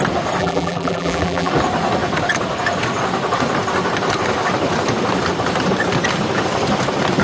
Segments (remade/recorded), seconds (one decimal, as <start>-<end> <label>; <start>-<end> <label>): 0.0-0.4 recorded; 0.4-1.5 remade; 1.5-7.2 recorded